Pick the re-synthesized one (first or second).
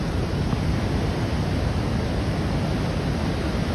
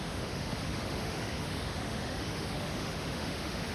second